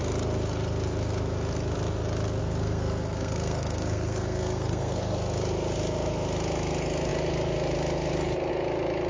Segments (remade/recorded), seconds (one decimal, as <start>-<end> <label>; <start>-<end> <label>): 0.0-2.4 recorded; 2.4-5.0 remade; 5.0-9.1 recorded